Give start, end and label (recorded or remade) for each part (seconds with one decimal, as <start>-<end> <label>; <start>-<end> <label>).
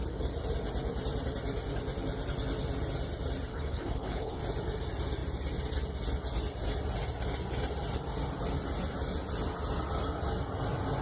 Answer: 0.0-3.5 recorded; 3.5-4.4 remade; 4.4-11.0 recorded